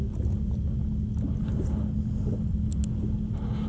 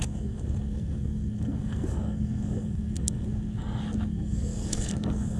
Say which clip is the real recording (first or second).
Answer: first